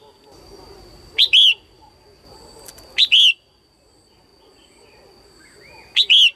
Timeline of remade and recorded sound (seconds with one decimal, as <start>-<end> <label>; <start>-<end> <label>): 0.0-6.4 recorded